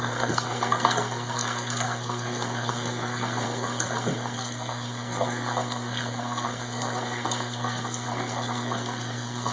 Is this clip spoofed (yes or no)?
yes